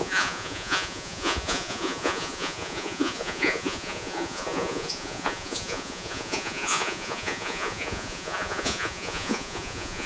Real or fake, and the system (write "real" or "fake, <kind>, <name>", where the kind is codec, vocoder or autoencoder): fake, vocoder, Vocos